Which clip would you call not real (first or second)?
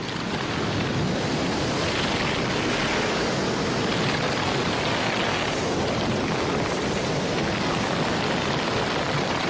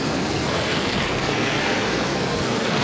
second